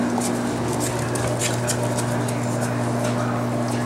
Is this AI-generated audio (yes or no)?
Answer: no